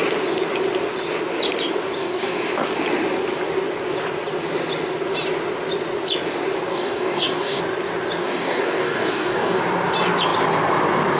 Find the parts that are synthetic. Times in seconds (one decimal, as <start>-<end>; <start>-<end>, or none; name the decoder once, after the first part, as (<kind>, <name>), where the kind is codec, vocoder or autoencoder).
2.0-2.5 (codec, DAC); 6.7-7.6; 8.2-9.6